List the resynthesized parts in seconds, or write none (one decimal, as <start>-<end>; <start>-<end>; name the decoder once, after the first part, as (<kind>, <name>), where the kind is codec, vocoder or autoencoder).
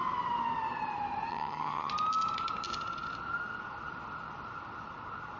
1.3-1.9 (vocoder, HiFi-GAN)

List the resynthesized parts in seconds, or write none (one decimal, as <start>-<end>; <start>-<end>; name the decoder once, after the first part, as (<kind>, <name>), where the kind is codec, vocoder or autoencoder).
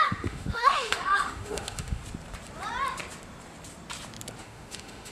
0.0-2.0 (autoencoder, DAC-VAE); 4.4-5.1